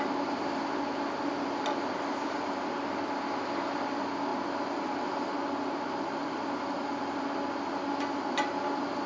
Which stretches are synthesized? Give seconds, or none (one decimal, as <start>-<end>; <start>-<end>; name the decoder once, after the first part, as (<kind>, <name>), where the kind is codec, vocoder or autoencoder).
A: none